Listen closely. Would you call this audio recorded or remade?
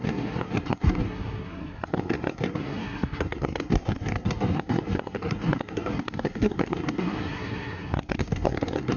remade